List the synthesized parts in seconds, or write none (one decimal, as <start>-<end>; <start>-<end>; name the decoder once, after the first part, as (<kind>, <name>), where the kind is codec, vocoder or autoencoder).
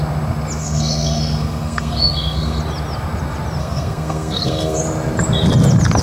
0.6-2.6 (codec, SNAC); 3.6-4.8